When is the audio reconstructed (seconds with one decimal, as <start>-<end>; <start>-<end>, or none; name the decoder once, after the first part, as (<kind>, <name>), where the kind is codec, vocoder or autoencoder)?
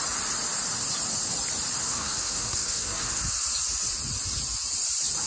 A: 1.8-3.2 (codec, SNAC)